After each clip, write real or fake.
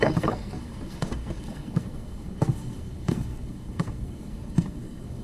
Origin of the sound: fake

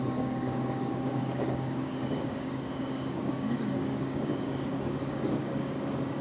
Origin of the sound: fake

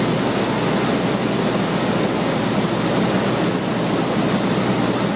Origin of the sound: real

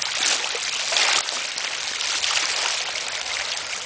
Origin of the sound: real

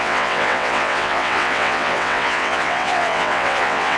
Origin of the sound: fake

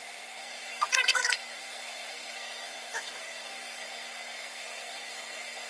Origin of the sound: fake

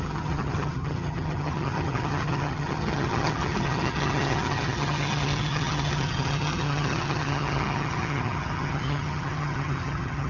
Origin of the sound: fake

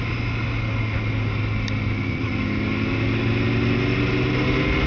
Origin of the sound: real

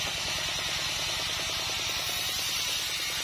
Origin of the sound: real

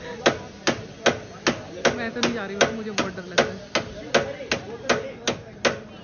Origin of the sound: real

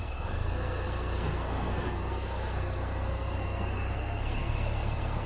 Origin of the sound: fake